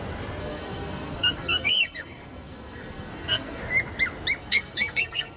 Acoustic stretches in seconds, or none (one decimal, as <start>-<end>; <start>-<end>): 0.0-0.4; 3.6-4.4